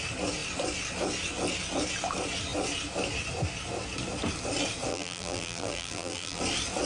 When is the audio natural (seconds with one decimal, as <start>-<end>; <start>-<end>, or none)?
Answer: 0.0-4.9; 6.4-6.9